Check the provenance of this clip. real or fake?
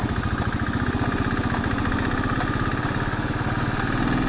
real